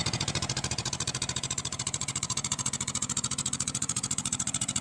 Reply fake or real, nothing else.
fake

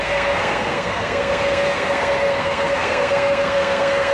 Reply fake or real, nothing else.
fake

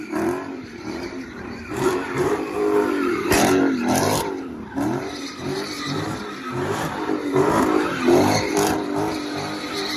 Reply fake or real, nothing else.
fake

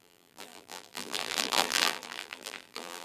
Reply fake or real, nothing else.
fake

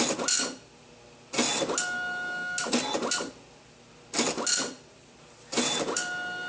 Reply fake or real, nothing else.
real